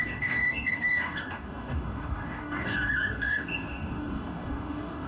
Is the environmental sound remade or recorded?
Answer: remade